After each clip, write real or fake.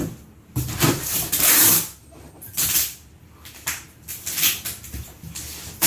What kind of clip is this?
real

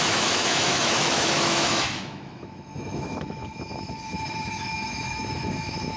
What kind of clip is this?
fake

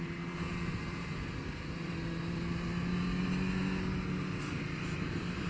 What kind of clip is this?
real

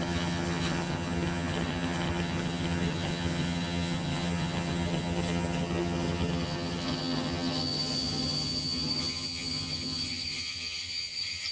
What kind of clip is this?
fake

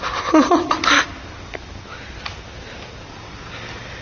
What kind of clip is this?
real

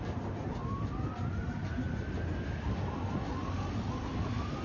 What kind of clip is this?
real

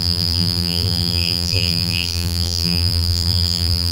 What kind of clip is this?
fake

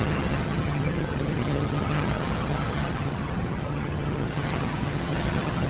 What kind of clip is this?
fake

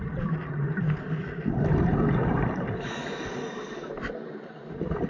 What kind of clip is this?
real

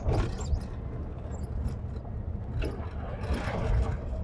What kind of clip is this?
real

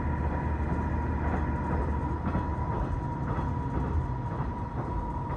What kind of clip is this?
real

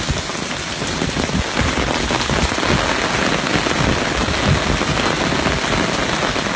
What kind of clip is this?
real